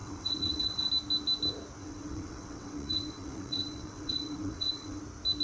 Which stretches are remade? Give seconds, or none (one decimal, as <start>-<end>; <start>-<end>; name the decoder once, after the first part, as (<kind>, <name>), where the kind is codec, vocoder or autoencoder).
0.0-0.9 (vocoder, WaveNeXt); 1.8-5.0